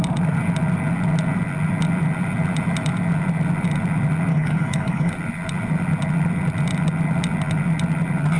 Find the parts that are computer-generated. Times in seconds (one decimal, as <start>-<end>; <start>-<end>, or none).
4.3-5.1